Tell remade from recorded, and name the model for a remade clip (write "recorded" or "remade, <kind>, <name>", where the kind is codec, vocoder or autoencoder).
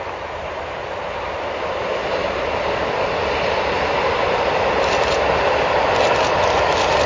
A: recorded